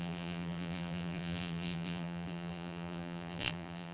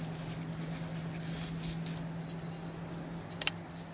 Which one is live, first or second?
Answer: second